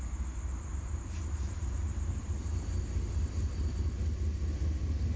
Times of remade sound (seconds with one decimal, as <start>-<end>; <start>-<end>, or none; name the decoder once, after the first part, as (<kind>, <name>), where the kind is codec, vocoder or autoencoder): 0.7-3.1 (vocoder, BigVGAN v2)